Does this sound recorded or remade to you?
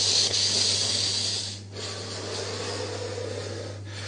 recorded